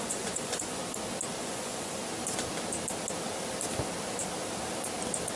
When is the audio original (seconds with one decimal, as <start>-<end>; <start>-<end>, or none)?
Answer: 0.8-1.4; 2.0-5.4